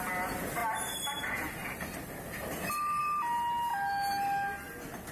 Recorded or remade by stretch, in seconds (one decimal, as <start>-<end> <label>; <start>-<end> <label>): 0.0-5.1 recorded